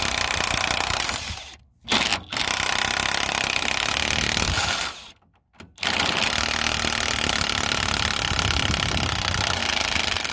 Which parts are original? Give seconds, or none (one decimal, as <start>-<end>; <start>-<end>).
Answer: 0.0-10.3